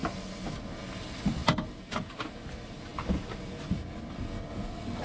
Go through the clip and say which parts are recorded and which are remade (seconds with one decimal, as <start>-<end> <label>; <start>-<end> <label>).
0.0-5.0 recorded